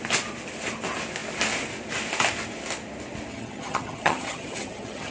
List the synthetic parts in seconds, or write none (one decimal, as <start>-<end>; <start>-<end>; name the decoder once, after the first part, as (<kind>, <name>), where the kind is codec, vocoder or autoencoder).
3.3-5.1 (vocoder, HiFi-GAN)